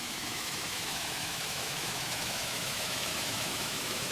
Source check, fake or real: fake